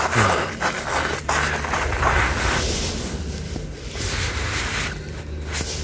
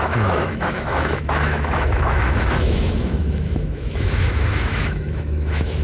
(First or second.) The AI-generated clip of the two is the second